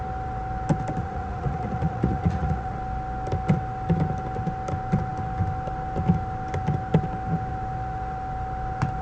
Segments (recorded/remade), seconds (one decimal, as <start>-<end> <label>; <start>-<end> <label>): 0.0-1.0 recorded; 1.0-2.8 remade; 2.8-9.0 recorded